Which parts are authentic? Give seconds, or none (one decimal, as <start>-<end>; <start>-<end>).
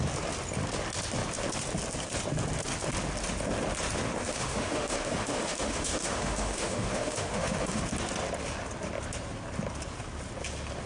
0.0-4.2; 7.8-10.9